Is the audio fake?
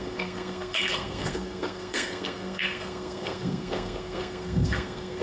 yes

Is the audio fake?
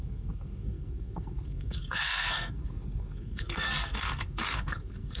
yes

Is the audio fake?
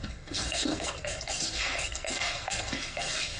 yes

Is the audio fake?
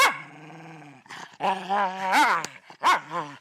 no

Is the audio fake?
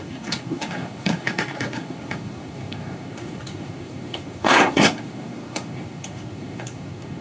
yes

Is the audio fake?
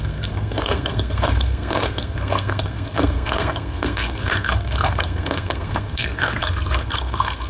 yes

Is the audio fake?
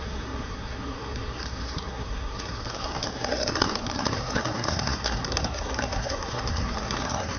yes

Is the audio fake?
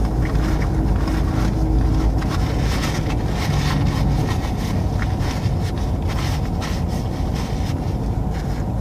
no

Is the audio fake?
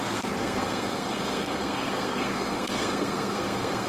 yes